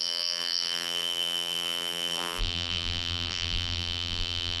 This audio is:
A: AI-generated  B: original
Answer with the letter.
A